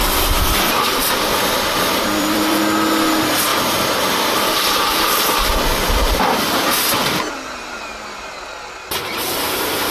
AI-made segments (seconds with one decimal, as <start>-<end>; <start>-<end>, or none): 0.0-2.6; 3.5-6.6; 7.0-7.9

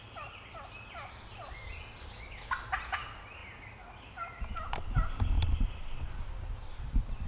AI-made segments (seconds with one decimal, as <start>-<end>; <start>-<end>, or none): none

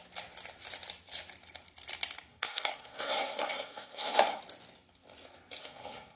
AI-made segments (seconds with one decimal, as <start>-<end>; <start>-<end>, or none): 2.3-4.4; 5.6-6.2

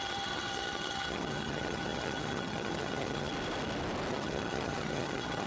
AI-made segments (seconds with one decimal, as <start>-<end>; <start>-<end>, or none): 0.0-3.3; 4.1-5.5

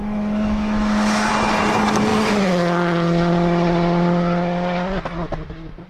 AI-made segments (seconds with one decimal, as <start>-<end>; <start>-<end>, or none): 0.0-1.3